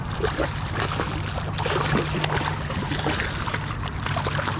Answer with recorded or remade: recorded